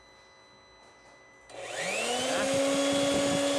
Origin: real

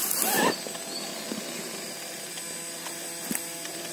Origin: real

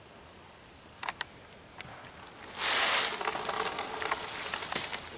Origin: real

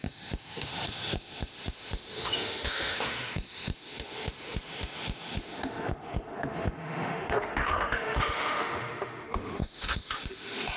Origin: fake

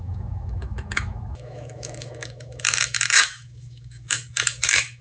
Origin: fake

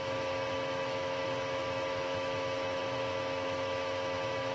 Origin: fake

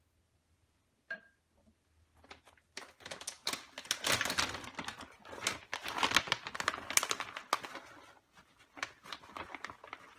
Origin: real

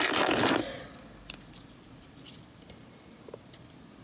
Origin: real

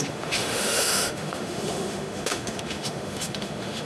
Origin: fake